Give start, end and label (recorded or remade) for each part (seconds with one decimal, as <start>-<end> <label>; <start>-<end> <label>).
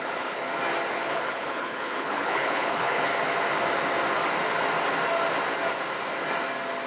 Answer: 0.0-0.4 remade; 0.4-0.9 recorded; 0.9-3.1 remade; 3.1-6.9 recorded